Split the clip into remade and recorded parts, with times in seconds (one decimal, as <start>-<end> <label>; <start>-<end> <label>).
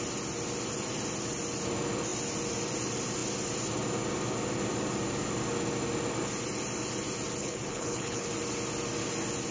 0.0-7.4 recorded; 7.4-8.3 remade; 8.3-9.5 recorded